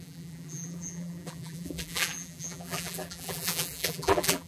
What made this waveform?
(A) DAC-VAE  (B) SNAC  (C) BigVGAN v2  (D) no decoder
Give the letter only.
C